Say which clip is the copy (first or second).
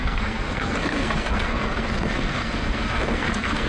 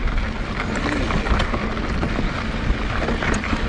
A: first